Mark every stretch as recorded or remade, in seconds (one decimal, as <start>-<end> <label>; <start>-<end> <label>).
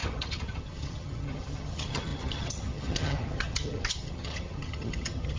0.0-5.4 remade